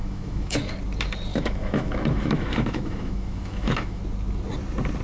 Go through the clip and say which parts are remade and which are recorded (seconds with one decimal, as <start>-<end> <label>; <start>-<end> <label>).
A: 0.0-0.7 remade; 0.7-1.3 recorded; 1.3-4.0 remade; 4.0-5.0 recorded